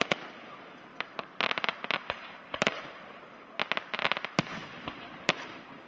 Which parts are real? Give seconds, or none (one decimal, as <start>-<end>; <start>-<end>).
0.0-0.9; 2.8-4.6